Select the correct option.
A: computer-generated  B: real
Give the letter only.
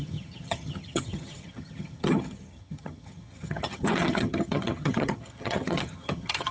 A